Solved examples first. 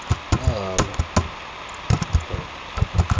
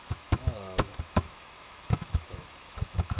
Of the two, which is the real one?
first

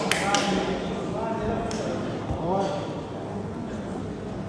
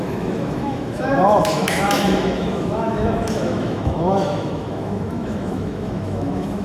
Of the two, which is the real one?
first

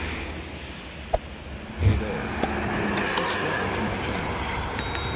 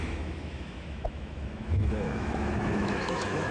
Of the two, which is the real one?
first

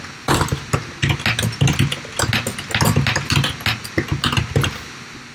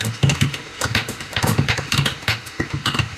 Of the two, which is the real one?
first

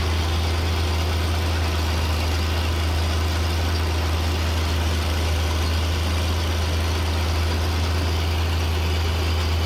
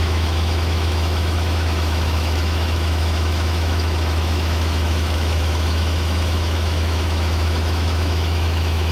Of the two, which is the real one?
first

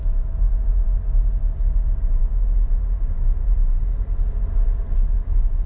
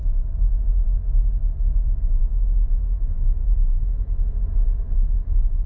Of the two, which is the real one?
first